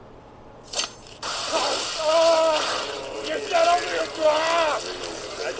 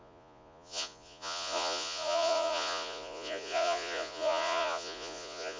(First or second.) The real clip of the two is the first